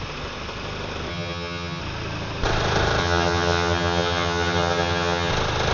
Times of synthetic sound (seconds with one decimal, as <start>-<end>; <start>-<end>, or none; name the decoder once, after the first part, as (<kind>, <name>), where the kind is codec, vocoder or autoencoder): 1.1-1.8 (vocoder, HiFi-GAN); 3.0-5.3